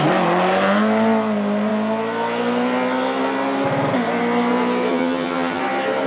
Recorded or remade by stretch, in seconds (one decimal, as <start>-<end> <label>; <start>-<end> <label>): 0.0-4.9 recorded; 4.9-5.6 remade; 5.6-6.1 recorded